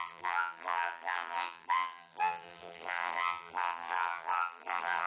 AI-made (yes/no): yes